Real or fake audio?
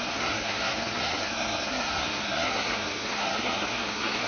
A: fake